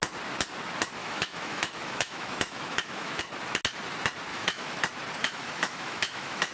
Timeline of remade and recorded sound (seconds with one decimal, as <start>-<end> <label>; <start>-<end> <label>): 0.0-1.0 recorded; 1.0-3.2 remade; 3.2-4.3 recorded; 4.3-4.8 remade; 4.8-5.2 recorded; 5.2-6.5 remade